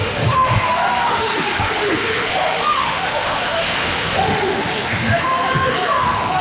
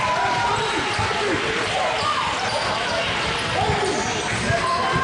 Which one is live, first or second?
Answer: second